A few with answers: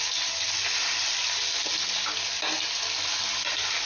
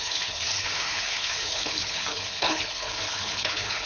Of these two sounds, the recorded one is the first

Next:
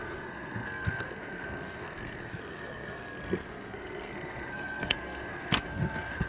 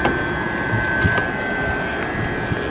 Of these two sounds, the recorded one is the second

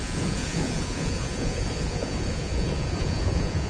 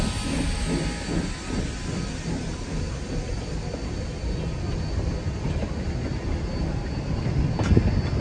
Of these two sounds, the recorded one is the second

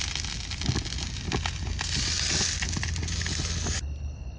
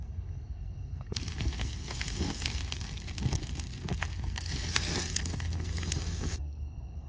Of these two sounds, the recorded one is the first